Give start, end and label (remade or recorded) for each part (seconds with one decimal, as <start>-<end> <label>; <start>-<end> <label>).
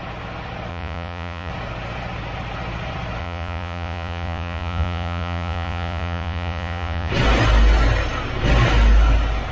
0.0-0.7 recorded; 0.7-1.5 remade; 1.5-3.2 recorded; 3.2-7.1 remade; 7.1-9.5 recorded